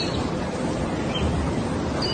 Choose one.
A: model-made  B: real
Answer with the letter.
B